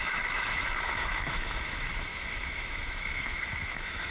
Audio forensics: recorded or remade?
remade